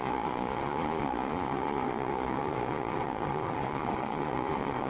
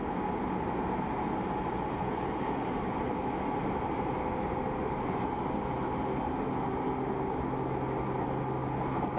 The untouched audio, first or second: second